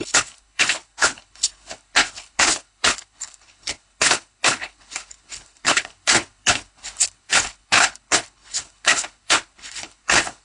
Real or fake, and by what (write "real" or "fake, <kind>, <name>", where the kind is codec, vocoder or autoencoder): fake, codec, HILCodec